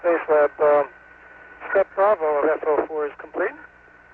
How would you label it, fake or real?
real